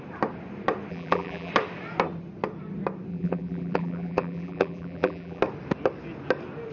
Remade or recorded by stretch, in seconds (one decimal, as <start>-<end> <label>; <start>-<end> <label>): 0.0-0.9 recorded; 0.9-1.5 remade; 1.5-3.1 recorded; 3.1-5.4 remade; 5.4-6.7 recorded